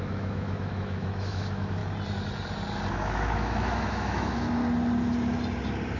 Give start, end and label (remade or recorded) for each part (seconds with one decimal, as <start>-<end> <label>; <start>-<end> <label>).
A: 0.0-1.8 remade; 1.8-2.9 recorded; 2.9-4.6 remade; 4.6-6.0 recorded